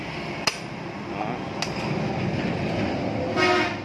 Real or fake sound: real